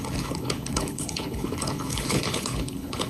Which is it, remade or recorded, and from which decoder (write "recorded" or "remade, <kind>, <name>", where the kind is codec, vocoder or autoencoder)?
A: remade, codec, HILCodec